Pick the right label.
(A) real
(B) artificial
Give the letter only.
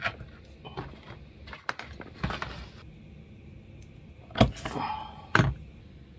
A